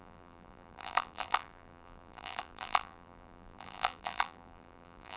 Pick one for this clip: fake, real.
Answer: fake